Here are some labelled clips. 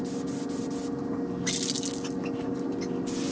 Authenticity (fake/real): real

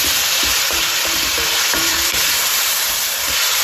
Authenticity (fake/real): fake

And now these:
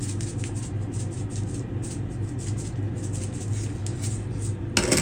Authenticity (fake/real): real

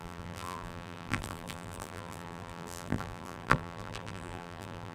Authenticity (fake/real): fake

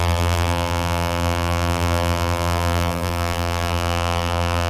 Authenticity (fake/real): fake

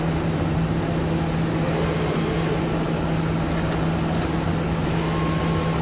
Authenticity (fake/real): real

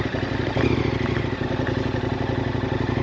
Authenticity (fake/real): real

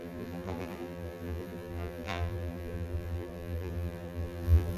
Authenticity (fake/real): fake